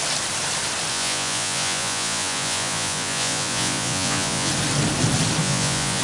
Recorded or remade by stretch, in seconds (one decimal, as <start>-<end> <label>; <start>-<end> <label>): 0.0-0.9 recorded; 0.9-4.5 remade; 4.5-5.4 recorded; 5.4-6.0 remade